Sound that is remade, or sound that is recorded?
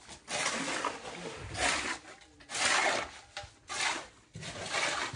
recorded